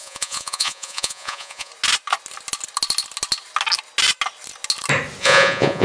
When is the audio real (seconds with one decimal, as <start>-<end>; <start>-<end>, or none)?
1.7-5.2